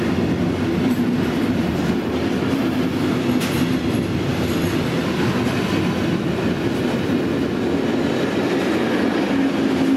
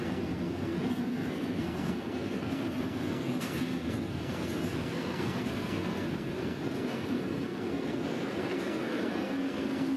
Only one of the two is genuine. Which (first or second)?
first